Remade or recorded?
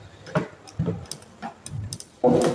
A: recorded